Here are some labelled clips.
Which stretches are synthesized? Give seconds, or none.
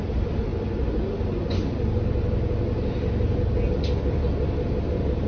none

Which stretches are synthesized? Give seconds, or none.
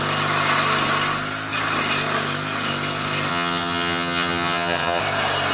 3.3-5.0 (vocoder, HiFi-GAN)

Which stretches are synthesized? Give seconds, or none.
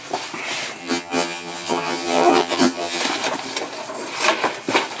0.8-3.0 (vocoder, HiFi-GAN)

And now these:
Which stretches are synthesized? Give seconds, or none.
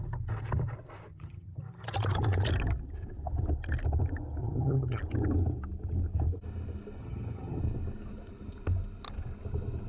1.1-1.6 (vocoder, HiFi-GAN); 4.4-5.0; 7.0-7.6